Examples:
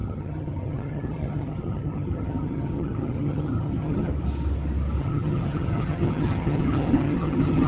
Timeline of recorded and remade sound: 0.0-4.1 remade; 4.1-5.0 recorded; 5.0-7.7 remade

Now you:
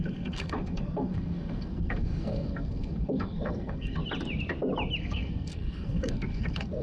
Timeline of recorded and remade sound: 0.0-4.0 remade; 4.0-5.0 recorded; 5.0-6.8 remade

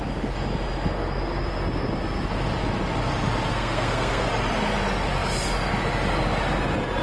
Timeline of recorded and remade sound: 0.0-3.5 recorded; 3.5-4.3 remade; 4.3-7.0 recorded

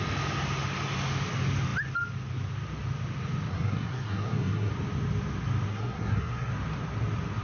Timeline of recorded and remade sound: 0.0-3.5 recorded; 3.5-4.7 remade; 4.7-5.7 recorded; 5.7-6.5 remade; 6.5-7.4 recorded

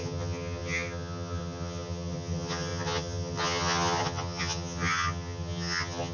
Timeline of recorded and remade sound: 0.0-6.1 remade

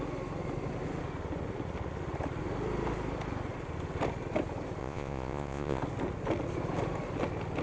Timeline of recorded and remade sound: 0.0-4.8 recorded; 4.8-5.8 remade; 5.8-7.6 recorded

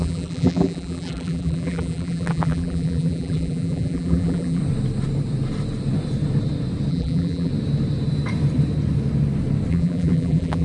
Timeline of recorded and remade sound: 0.0-4.6 remade; 4.6-6.9 recorded; 6.9-7.5 remade; 7.5-9.7 recorded; 9.7-10.6 remade